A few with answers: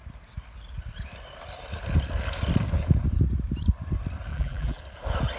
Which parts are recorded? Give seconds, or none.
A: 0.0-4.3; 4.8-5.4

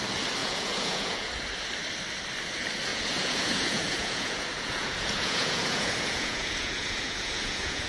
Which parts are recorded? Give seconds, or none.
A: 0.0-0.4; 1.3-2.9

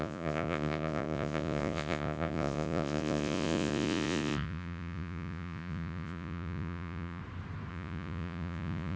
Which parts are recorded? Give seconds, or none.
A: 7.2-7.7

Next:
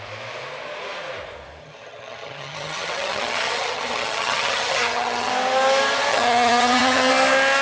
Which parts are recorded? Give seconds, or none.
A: 0.0-1.6; 5.3-6.1; 7.1-7.6

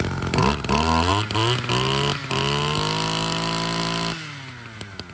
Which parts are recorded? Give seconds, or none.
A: 0.0-5.1

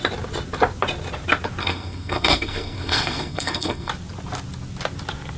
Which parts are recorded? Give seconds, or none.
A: 0.0-1.6; 3.9-5.4

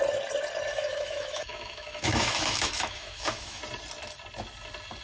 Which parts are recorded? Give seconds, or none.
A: 0.0-0.7; 3.6-5.0